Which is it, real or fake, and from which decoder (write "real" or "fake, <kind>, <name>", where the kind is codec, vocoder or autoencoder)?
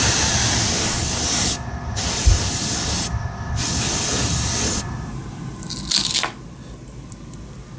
real